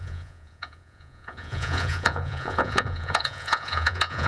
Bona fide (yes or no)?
no